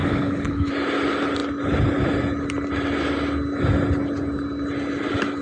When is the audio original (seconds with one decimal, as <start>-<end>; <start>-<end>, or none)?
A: 0.7-5.4

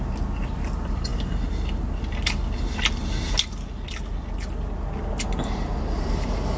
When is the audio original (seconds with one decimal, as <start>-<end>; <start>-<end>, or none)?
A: 0.0-6.6

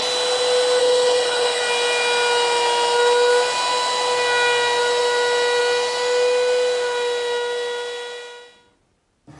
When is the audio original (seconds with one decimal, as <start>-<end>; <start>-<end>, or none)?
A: 0.0-0.8; 1.6-9.4

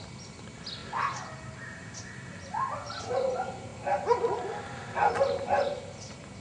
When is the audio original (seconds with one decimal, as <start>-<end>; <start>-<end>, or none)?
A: 0.0-6.4

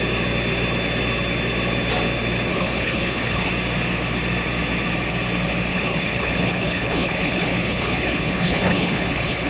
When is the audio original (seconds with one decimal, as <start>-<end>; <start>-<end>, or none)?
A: 0.0-2.5; 3.5-5.7

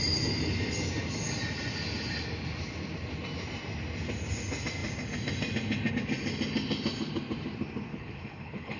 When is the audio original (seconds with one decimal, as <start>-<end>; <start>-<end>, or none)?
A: 0.0-7.9

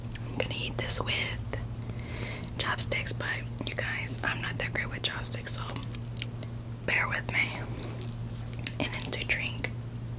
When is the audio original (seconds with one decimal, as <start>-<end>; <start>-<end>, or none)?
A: 0.0-5.1; 5.7-10.2

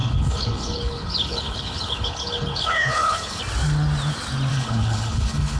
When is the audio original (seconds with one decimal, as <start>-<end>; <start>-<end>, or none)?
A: 3.4-4.5